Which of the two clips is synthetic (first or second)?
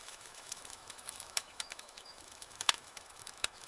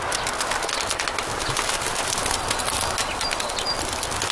first